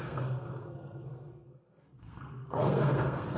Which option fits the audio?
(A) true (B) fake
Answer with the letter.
B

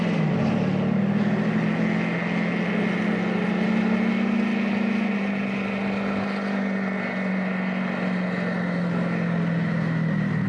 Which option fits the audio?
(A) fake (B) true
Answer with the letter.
B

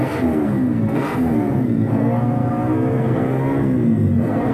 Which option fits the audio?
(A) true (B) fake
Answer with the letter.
B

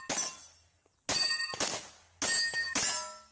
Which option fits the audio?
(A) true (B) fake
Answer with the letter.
A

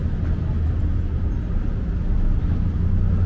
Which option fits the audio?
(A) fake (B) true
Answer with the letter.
B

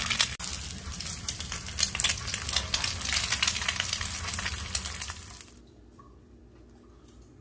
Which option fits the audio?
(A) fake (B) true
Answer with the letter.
B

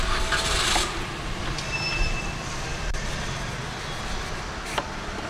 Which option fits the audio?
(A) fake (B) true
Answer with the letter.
B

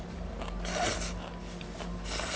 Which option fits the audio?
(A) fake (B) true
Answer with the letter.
B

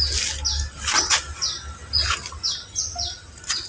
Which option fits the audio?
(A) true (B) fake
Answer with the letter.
A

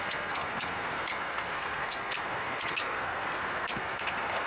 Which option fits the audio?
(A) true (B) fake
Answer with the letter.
B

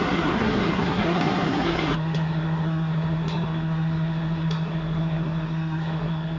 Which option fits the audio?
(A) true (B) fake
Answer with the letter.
B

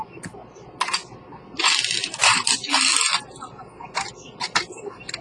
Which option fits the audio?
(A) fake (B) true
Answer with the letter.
B